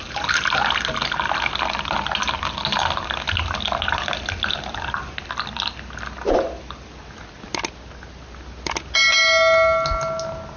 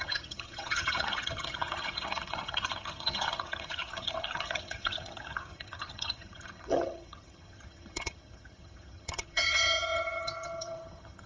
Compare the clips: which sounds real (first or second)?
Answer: first